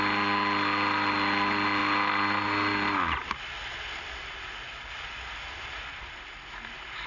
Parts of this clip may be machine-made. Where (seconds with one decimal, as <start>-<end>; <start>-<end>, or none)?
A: none